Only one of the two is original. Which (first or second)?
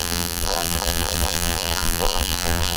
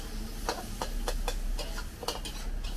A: second